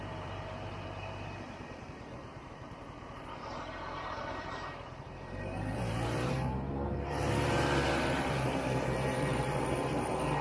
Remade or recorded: remade